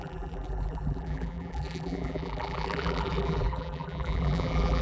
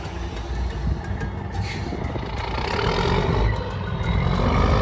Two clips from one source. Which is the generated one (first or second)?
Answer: first